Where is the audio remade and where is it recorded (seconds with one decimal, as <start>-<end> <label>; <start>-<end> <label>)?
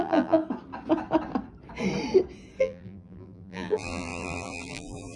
0.0-0.4 remade; 0.4-2.6 recorded; 2.6-5.2 remade